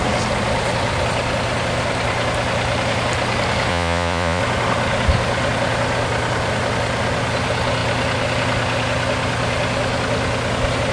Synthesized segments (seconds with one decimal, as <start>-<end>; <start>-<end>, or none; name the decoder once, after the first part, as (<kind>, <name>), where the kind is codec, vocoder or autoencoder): 3.7-4.4 (vocoder, Vocos)